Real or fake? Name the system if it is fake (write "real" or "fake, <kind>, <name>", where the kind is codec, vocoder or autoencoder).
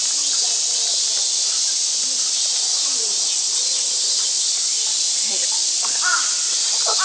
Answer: real